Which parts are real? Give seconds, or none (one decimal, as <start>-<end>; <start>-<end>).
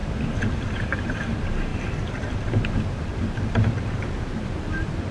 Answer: none